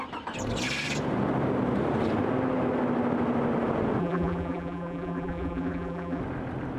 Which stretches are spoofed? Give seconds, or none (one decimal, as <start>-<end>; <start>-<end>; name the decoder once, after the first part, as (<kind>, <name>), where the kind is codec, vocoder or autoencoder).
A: 4.0-6.2 (vocoder, BigVGAN v2)

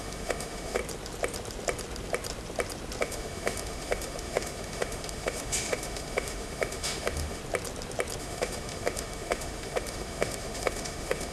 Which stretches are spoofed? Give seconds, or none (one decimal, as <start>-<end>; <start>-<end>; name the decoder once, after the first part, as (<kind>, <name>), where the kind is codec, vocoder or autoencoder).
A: 0.0-0.8 (autoencoder, DAC-VAE); 3.0-7.4; 8.2-11.3

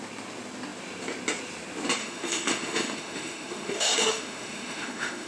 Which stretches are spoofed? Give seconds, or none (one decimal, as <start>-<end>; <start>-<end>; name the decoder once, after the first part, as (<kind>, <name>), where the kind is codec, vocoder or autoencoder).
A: 2.0-5.3 (autoencoder, DAC-VAE)